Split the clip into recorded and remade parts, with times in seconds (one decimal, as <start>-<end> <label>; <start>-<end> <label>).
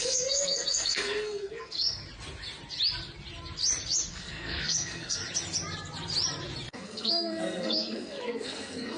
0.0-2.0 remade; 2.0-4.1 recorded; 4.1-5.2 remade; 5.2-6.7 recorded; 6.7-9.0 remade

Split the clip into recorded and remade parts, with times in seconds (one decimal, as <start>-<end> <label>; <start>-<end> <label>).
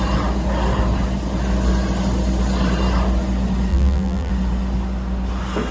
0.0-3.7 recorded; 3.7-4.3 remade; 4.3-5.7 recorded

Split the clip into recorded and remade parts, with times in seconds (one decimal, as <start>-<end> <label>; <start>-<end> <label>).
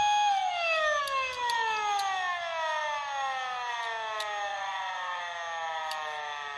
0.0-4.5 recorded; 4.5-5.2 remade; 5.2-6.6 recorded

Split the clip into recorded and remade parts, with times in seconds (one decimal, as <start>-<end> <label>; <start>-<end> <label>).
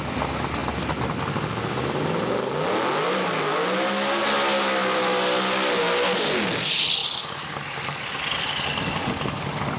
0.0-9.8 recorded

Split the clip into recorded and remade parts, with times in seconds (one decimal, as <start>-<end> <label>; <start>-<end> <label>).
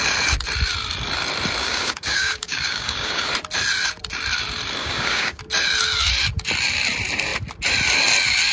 0.0-1.6 recorded; 1.6-3.3 remade; 3.3-4.8 recorded; 4.8-5.4 remade; 5.4-8.5 recorded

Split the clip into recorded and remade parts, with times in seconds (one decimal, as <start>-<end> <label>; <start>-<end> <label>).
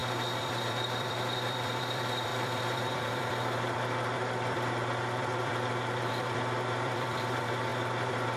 0.0-8.4 remade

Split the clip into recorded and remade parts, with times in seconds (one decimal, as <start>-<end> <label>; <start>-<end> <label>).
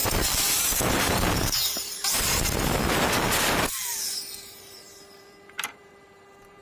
0.0-2.4 remade; 2.4-3.9 recorded; 3.9-6.6 remade